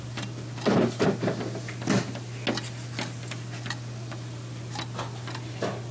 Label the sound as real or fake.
real